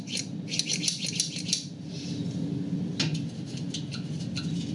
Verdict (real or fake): real